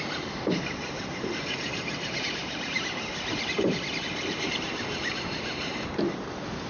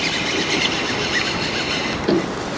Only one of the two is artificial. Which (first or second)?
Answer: first